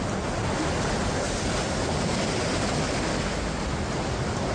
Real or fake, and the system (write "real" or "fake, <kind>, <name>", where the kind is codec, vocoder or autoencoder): real